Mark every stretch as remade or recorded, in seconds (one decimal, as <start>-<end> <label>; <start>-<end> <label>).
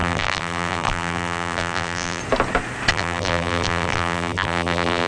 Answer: 0.0-2.2 remade; 2.2-2.9 recorded; 2.9-5.1 remade